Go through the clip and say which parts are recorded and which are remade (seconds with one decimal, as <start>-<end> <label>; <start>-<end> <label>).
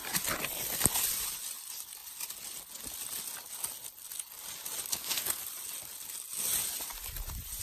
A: 0.0-4.9 recorded; 4.9-5.4 remade; 5.4-7.6 recorded